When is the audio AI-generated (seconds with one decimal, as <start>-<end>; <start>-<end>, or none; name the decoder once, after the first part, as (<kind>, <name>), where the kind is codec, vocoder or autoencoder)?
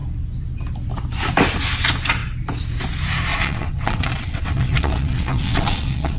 3.3-6.2 (vocoder, WaveNeXt)